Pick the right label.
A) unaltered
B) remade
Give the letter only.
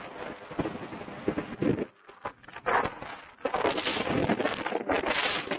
A